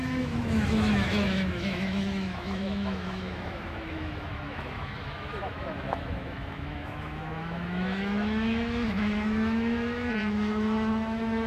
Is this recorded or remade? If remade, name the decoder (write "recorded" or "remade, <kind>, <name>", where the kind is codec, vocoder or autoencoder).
remade, autoencoder, DAC-VAE